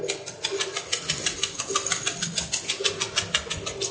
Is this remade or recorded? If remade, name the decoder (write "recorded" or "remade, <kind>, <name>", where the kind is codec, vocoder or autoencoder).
recorded